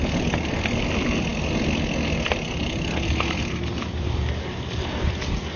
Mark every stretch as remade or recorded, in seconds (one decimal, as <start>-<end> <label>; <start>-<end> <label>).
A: 0.0-5.6 recorded